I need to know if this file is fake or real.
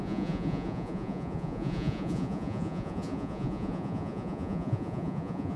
fake